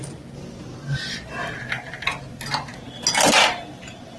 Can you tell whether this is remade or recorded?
recorded